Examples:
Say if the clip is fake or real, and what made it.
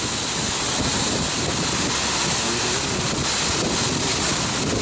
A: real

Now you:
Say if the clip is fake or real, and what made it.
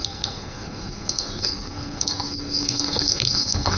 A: fake, codec, SNAC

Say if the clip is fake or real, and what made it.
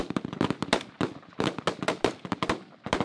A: real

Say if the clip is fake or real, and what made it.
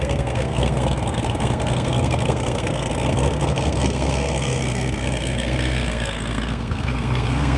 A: fake, codec, SNAC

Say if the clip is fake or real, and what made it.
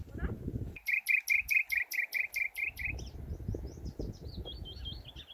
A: real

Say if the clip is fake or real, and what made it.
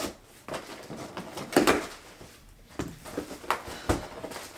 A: real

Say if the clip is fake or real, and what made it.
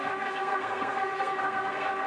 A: fake, codec, SNAC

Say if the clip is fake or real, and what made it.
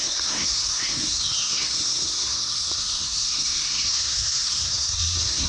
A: fake, codec, SNAC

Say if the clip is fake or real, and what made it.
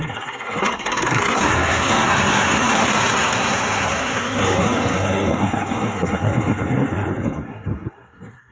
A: fake, codec, SNAC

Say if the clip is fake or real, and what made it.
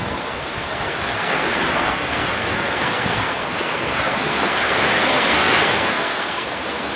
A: fake, codec, SNAC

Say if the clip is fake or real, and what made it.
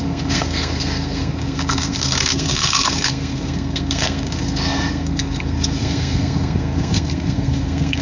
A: fake, codec, SNAC